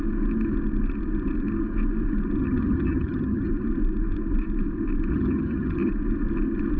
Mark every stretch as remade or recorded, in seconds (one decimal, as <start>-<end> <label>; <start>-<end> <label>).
0.0-2.4 recorded; 2.4-3.5 remade; 3.5-5.1 recorded; 5.1-5.9 remade; 5.9-6.8 recorded